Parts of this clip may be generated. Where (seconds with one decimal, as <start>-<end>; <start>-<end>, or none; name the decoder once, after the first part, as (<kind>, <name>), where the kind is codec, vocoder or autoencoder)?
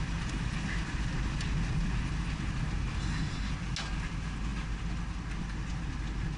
3.0-3.5 (codec, SNAC)